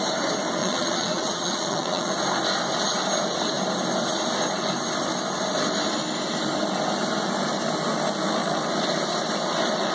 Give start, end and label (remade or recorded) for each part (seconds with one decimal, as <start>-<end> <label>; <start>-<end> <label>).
0.0-0.6 recorded; 0.6-2.1 remade; 2.1-9.9 recorded

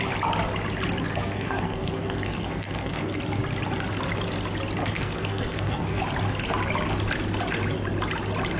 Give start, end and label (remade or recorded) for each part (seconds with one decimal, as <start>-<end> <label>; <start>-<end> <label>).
0.0-1.1 recorded; 1.1-3.2 remade; 3.2-4.8 recorded; 4.8-6.0 remade; 6.0-8.6 recorded

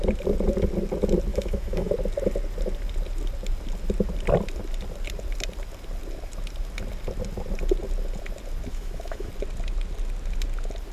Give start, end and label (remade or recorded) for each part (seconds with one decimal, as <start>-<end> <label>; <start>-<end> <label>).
0.0-1.3 recorded; 1.3-1.9 remade; 1.9-8.7 recorded; 8.7-9.3 remade; 9.3-10.9 recorded

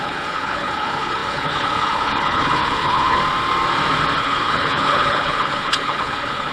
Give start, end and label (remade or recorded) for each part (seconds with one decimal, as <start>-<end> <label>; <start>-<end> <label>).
0.0-3.2 remade; 3.2-4.2 recorded; 4.2-6.5 remade

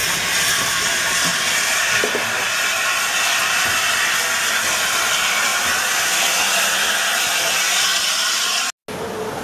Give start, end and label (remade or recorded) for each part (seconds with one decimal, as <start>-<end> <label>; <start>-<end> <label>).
0.0-2.0 remade; 2.0-9.4 recorded

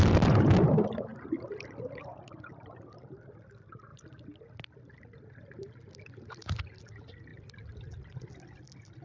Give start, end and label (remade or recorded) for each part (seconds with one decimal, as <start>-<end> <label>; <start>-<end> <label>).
0.0-9.0 recorded

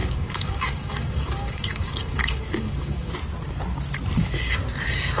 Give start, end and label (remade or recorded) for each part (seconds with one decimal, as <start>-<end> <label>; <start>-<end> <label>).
0.0-3.1 remade; 3.1-5.2 recorded